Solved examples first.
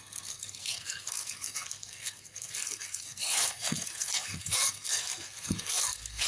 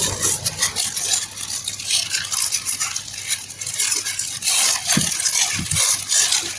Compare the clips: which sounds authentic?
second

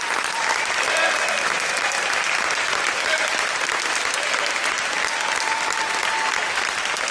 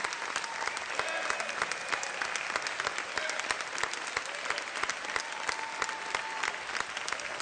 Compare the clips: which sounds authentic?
second